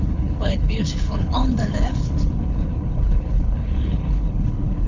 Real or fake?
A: fake